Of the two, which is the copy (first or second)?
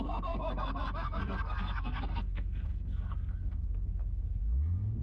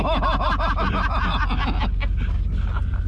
first